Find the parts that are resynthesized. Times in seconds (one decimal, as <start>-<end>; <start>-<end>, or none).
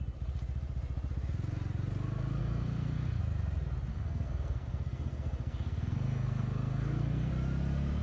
2.4-3.2; 3.9-7.3